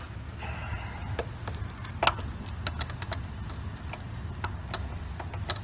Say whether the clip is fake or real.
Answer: real